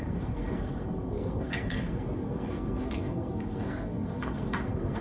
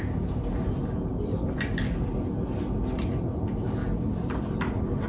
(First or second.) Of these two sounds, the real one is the second